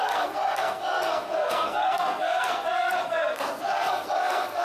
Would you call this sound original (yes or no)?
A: no